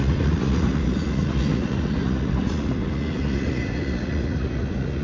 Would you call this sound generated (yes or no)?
yes